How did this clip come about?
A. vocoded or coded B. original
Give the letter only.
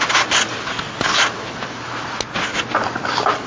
B